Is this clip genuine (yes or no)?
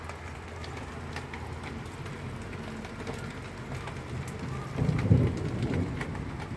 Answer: yes